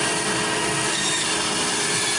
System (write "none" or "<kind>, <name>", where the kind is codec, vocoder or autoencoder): none